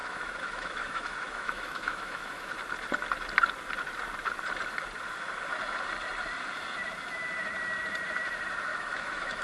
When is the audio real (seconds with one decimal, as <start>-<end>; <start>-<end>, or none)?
2.5-8.7